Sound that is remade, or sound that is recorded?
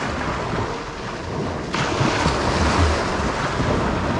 recorded